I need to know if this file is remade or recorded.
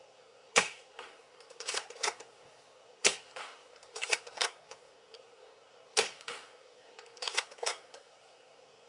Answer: remade